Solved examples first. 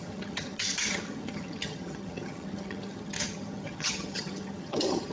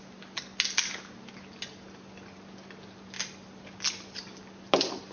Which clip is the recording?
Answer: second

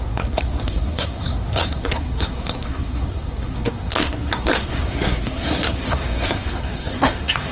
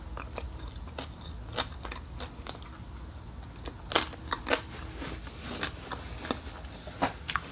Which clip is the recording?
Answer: second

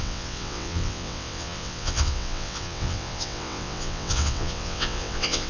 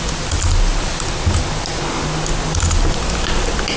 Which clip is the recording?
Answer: second